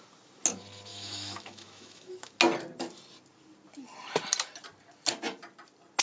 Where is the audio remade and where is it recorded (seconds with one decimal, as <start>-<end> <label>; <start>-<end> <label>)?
0.0-0.9 recorded; 0.9-2.1 remade; 2.1-6.0 recorded